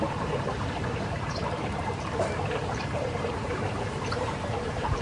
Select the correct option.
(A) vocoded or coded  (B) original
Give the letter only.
A